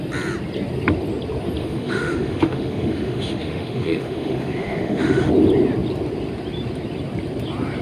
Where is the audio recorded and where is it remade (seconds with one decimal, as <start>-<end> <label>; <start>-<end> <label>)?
0.0-1.6 recorded; 1.6-5.3 remade; 5.3-7.8 recorded